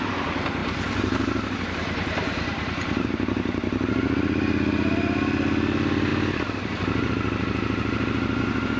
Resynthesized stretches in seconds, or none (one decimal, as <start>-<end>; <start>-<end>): 0.6-3.1